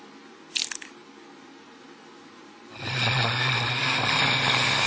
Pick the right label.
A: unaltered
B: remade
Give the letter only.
A